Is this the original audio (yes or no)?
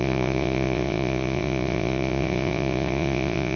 no